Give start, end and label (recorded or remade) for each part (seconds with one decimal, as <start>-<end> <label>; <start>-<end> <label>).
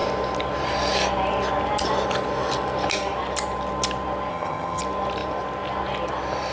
0.0-4.3 recorded; 4.3-4.8 remade; 4.8-6.5 recorded